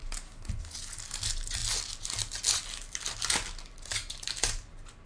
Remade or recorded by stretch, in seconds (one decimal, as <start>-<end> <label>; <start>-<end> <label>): 0.0-5.1 recorded